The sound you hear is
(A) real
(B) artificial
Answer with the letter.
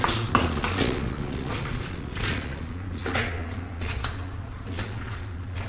B